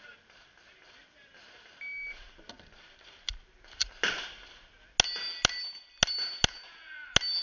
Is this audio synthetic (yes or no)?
no